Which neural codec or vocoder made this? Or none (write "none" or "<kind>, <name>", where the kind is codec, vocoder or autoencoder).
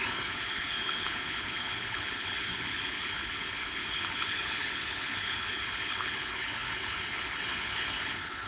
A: codec, HILCodec